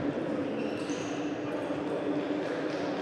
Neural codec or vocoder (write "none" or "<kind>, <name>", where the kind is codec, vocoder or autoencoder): none